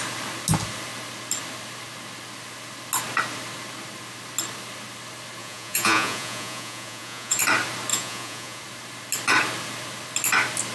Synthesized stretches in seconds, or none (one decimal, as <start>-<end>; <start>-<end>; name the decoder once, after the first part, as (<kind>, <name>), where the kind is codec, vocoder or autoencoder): 5.4-7.4 (vocoder, Vocos); 7.9-8.6